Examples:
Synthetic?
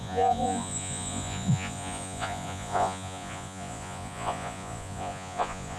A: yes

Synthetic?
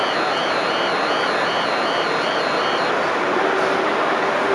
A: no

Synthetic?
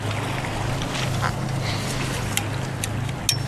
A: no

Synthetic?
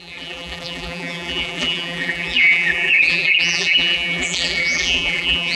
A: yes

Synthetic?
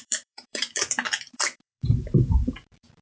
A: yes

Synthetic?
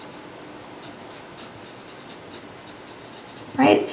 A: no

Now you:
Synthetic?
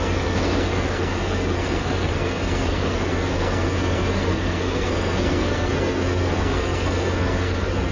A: yes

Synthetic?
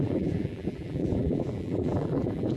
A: yes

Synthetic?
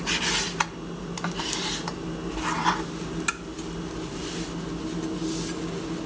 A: no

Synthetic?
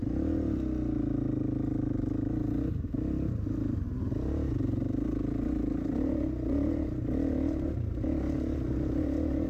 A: no